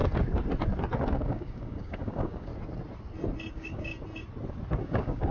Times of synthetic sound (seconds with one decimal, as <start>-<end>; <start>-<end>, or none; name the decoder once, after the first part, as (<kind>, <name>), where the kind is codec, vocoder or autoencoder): 1.2-2.5 (codec, DAC); 3.5-3.9; 4.8-5.3